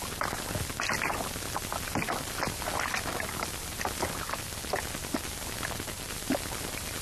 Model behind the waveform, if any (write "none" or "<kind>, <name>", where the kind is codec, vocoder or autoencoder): none